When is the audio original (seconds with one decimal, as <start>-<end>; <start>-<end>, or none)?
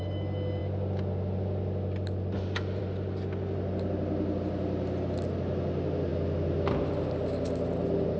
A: 0.0-8.2